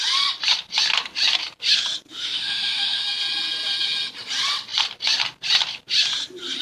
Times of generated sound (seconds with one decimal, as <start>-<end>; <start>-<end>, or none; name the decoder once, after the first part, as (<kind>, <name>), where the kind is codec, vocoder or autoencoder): 2.1-3.0 (autoencoder, DAC-VAE)